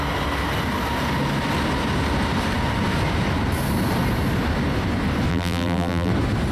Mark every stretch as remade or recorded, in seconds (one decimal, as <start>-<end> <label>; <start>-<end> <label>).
0.0-5.3 recorded; 5.3-6.1 remade; 6.1-6.5 recorded